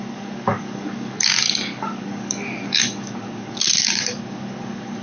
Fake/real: fake